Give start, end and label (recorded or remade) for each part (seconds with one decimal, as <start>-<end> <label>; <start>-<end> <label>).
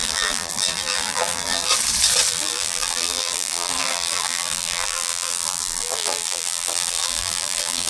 0.0-1.7 remade; 1.7-2.3 recorded; 2.3-7.9 remade